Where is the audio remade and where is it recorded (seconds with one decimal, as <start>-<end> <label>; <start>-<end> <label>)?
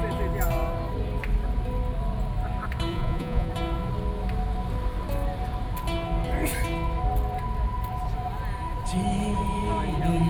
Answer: 0.0-2.9 recorded; 2.9-3.5 remade; 3.5-10.3 recorded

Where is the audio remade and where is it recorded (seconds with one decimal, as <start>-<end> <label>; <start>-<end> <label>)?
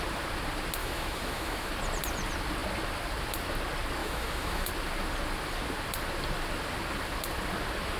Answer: 0.0-0.8 recorded; 0.8-1.7 remade; 1.7-4.0 recorded; 4.0-4.7 remade; 4.7-8.0 recorded